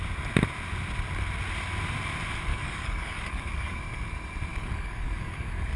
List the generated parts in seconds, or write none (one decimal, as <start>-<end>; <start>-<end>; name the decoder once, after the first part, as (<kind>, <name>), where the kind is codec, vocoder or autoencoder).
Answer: 2.5-3.8 (codec, DAC); 4.5-5.8